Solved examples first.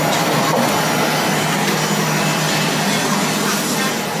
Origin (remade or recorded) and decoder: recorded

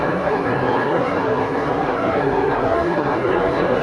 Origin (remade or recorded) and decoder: remade, codec, SNAC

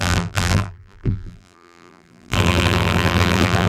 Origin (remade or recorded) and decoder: remade, vocoder, BigVGAN v2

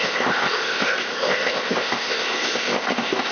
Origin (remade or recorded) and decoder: remade, codec, ZipCodec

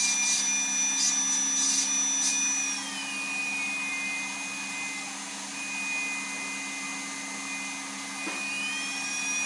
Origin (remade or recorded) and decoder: recorded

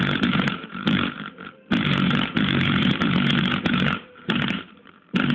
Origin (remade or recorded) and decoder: remade, vocoder, BigVGAN v2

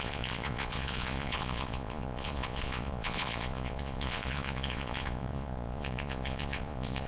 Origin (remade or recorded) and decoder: remade, vocoder, Vocos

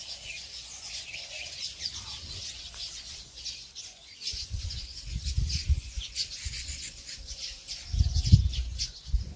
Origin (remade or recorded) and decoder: remade, vocoder, Vocos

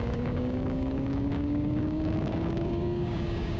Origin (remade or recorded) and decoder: remade, codec, DAC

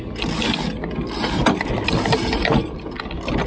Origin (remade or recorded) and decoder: recorded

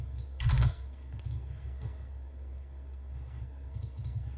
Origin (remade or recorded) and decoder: remade, codec, SNAC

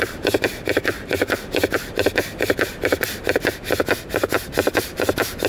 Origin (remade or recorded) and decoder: remade, vocoder, BigVGAN v2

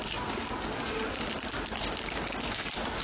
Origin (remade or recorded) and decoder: recorded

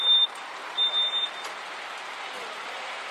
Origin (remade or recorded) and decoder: recorded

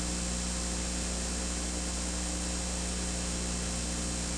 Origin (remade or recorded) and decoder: recorded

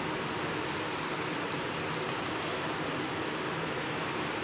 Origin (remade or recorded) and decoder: recorded